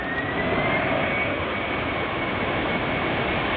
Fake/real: real